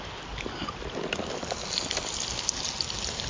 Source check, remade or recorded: recorded